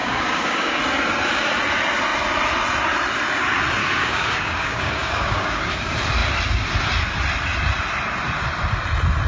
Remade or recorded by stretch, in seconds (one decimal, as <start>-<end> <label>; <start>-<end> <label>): 0.0-0.8 remade; 0.8-3.8 recorded; 3.8-5.7 remade; 5.7-9.3 recorded